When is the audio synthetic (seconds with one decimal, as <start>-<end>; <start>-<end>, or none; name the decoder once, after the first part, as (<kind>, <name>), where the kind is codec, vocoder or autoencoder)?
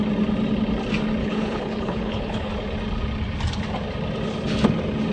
1.2-2.5 (codec, HILCodec)